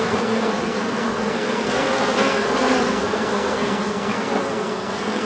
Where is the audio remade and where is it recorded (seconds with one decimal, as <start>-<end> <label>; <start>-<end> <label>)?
0.0-5.2 remade